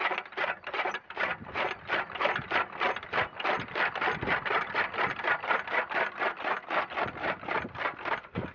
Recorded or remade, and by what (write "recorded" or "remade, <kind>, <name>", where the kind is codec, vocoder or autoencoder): recorded